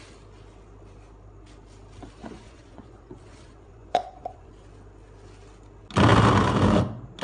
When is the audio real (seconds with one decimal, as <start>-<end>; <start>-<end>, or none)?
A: 0.0-2.2; 4.5-7.2